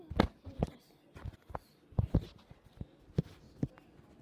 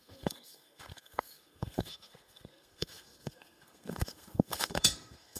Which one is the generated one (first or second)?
second